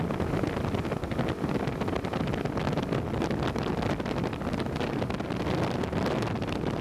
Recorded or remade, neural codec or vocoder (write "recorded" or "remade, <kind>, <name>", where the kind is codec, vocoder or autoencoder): recorded